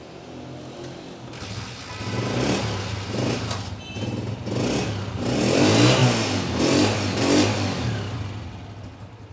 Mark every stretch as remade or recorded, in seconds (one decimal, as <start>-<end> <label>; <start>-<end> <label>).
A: 0.0-9.3 recorded

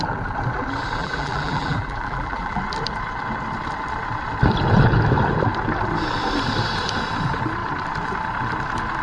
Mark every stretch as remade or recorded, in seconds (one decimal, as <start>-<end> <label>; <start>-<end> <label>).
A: 0.0-1.0 recorded; 1.0-2.6 remade; 2.6-9.0 recorded

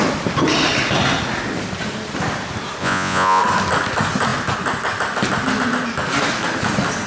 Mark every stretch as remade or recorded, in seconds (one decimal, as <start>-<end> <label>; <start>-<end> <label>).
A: 0.0-2.8 recorded; 2.8-3.4 remade; 3.4-7.1 recorded

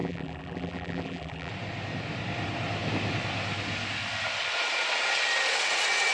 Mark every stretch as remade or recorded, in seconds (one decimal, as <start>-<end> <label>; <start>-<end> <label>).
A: 0.0-1.5 remade; 1.5-6.1 recorded

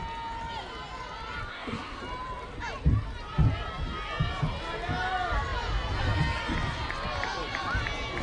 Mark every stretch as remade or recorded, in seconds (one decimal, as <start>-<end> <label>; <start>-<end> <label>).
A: 0.0-1.5 recorded; 1.5-2.0 remade; 2.0-8.2 recorded